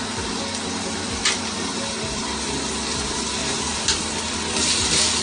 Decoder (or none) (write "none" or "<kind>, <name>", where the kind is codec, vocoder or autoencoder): none